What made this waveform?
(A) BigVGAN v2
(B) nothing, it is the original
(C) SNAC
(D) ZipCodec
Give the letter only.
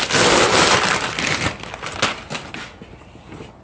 B